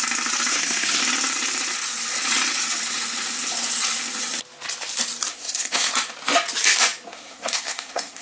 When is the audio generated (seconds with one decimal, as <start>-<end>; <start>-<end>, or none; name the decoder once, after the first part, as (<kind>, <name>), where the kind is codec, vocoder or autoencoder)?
0.5-1.0 (codec, SNAC); 5.3-5.9; 7.1-8.2

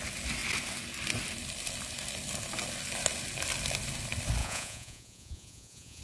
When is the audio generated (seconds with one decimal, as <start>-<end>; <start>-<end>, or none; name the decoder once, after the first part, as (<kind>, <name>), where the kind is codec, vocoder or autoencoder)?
4.4-6.0 (vocoder, Vocos)

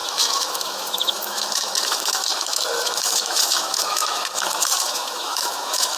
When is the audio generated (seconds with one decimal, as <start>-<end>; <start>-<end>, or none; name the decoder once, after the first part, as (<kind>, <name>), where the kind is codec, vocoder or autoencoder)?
0.0-6.0 (autoencoder, DAC-VAE)

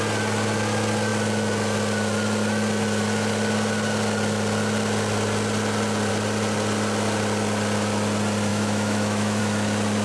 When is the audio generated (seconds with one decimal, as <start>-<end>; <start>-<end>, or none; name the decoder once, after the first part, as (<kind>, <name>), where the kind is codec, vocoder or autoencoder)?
8.5-9.4 (autoencoder, DAC-VAE)

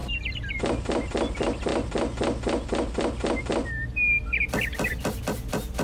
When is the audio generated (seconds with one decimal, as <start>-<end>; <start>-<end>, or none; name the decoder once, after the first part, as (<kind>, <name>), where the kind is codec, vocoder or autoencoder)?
none

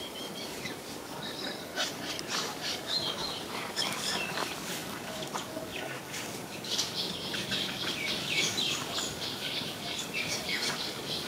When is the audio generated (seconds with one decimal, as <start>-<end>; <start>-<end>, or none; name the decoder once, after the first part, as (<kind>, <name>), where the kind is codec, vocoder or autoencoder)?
0.0-1.7 (codec, DAC); 2.2-11.3

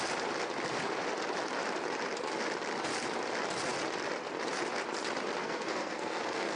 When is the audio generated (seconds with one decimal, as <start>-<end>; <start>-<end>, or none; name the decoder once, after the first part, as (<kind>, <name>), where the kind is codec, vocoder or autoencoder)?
5.4-6.6 (codec, SNAC)

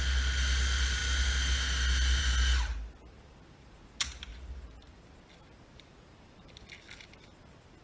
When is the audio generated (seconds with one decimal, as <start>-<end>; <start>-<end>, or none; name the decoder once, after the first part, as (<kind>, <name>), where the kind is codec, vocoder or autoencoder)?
none